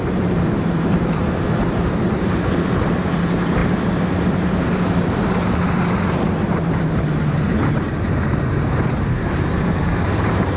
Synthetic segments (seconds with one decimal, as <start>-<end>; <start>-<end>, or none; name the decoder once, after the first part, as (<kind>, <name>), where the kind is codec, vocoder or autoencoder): 0.0-3.6 (vocoder, BigVGAN v2); 4.5-10.6